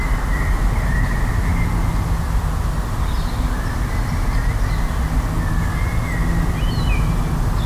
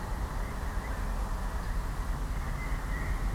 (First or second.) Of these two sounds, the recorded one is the first